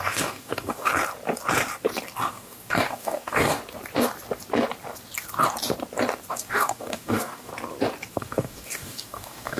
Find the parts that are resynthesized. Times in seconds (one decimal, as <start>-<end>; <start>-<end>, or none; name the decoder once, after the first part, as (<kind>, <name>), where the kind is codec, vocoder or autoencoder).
0.0-0.9 (codec, DAC); 2.3-3.6; 6.3-7.5; 8.1-9.6